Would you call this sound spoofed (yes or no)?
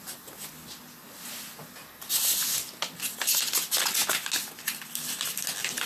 no